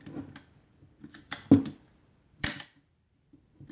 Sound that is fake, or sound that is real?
fake